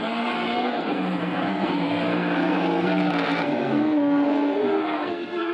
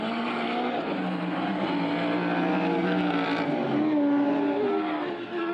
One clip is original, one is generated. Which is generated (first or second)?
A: first